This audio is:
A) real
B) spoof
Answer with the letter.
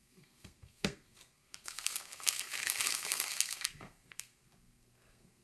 B